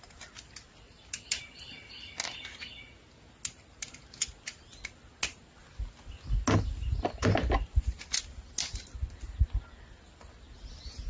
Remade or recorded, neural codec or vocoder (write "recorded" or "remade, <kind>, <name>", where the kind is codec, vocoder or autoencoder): recorded